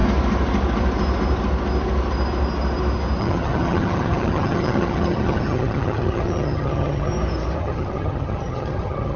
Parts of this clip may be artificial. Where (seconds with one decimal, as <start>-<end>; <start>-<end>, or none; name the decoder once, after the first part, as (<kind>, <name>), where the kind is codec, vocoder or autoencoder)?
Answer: 3.2-7.1 (vocoder, HiFi-GAN); 7.6-9.2